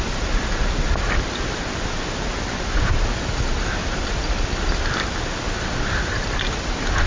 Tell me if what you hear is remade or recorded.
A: recorded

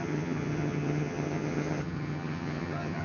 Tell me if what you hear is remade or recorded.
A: remade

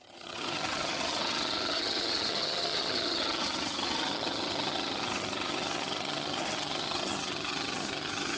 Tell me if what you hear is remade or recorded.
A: remade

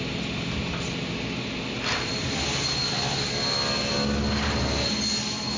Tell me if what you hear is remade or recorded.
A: recorded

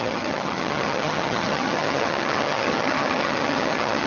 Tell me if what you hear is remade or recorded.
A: remade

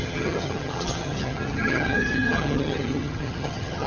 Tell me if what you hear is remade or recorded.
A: remade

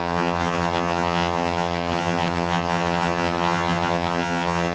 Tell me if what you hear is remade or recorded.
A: remade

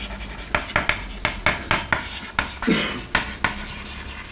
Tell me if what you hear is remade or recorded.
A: recorded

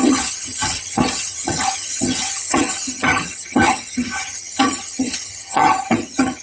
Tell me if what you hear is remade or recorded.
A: remade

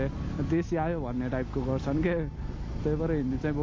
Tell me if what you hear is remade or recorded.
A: recorded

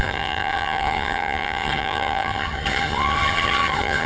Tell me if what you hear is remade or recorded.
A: remade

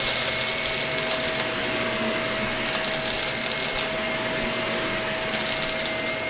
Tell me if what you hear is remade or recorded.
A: recorded